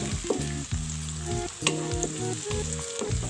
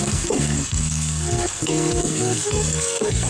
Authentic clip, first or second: first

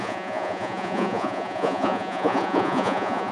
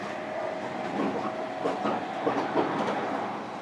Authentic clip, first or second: second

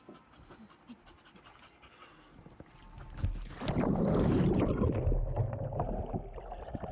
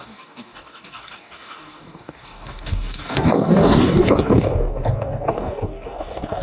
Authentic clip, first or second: first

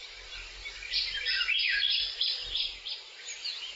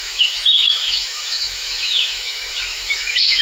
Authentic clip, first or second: first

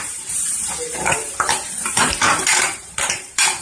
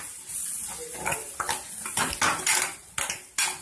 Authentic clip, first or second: second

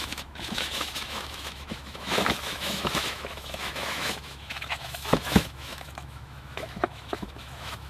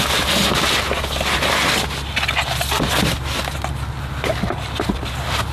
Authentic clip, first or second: second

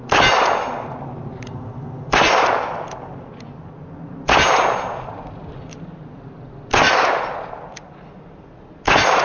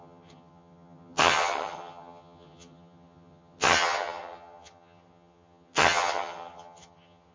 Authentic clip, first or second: first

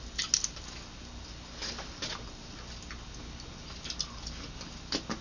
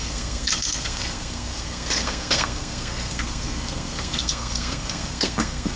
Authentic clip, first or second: first